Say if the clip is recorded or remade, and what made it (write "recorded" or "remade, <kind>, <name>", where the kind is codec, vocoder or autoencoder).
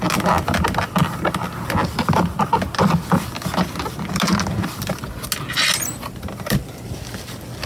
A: recorded